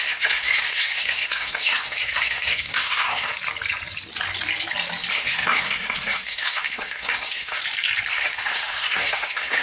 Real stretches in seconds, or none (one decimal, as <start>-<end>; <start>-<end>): 3.3-5.1; 7.6-8.1